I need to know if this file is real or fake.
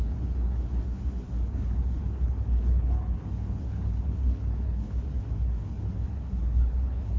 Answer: fake